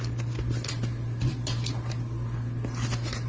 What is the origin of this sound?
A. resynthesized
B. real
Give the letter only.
B